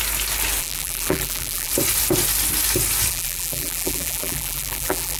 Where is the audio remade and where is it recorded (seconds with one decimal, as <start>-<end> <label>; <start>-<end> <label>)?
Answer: 0.0-0.6 recorded; 0.6-1.7 remade; 1.7-3.1 recorded; 3.1-5.2 remade